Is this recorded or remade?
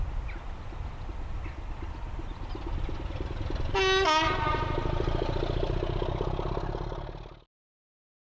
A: recorded